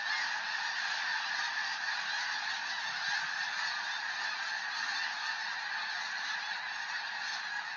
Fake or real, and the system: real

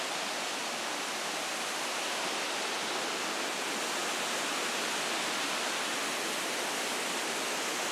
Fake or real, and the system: real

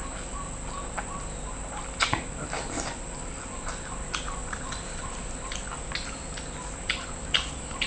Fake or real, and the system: real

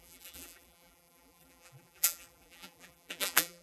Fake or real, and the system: fake, vocoder, BigVGAN v2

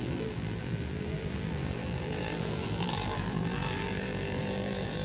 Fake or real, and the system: fake, vocoder, BigVGAN v2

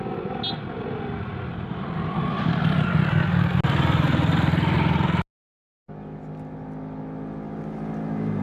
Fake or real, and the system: real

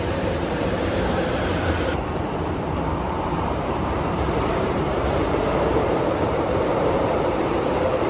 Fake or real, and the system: fake, vocoder, BigVGAN v2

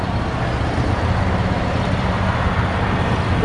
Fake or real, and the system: real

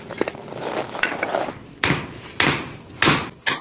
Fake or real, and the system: real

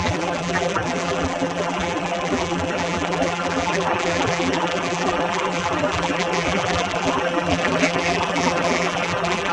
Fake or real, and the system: fake, vocoder, BigVGAN v2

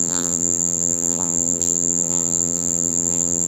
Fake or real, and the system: fake, vocoder, BigVGAN v2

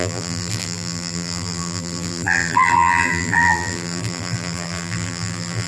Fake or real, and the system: fake, vocoder, BigVGAN v2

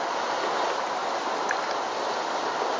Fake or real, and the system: real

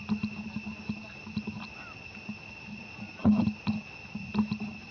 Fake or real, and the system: real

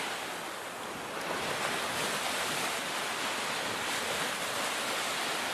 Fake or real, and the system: real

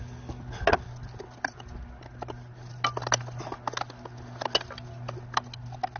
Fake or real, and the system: real